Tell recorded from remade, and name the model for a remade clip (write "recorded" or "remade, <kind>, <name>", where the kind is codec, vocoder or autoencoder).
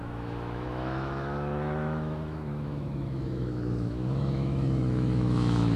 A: remade, autoencoder, DAC-VAE